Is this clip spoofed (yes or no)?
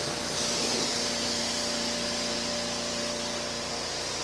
no